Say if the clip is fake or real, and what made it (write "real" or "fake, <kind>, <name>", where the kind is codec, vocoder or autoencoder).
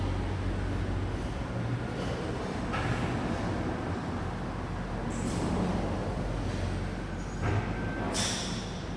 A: real